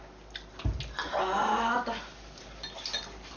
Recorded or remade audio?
recorded